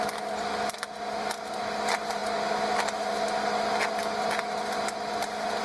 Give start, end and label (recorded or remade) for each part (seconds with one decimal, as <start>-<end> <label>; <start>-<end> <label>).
0.0-5.6 recorded